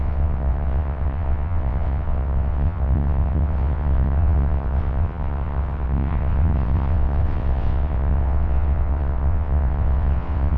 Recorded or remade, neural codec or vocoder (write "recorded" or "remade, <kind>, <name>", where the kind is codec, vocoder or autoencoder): remade, vocoder, WaveNeXt